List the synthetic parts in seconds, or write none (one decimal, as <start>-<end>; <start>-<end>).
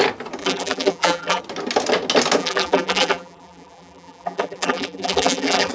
0.4-1.4; 2.4-5.7